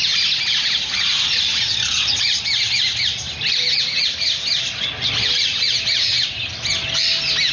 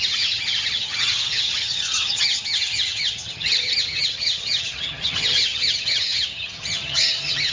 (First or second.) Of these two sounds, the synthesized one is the second